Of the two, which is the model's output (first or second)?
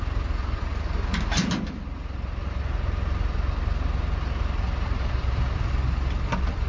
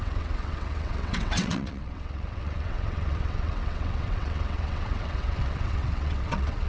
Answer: second